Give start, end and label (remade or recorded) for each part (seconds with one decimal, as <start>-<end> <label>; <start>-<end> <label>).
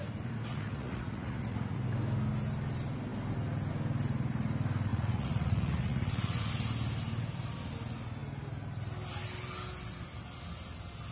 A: 0.0-0.5 recorded; 0.5-1.8 remade; 1.8-4.9 recorded; 4.9-6.5 remade; 6.5-11.1 recorded